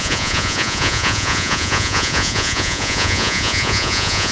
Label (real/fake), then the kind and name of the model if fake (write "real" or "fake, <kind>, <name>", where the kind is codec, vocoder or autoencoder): fake, vocoder, Vocos